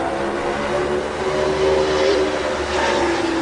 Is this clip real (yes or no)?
yes